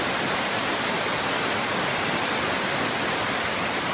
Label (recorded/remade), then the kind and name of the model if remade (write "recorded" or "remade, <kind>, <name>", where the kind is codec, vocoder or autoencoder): recorded